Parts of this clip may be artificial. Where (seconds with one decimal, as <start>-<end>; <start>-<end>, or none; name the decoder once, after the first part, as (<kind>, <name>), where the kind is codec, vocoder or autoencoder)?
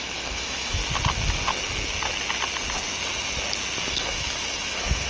0.0-0.8 (autoencoder, DAC-VAE); 3.9-5.1